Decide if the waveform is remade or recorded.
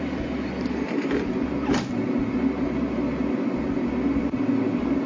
recorded